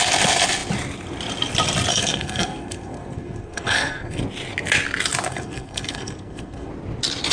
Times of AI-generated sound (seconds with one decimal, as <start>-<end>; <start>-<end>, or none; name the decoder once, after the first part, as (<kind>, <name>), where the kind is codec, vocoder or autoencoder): 1.9-4.2 (codec, SNAC); 5.3-6.7